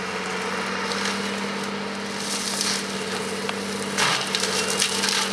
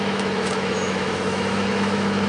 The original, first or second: first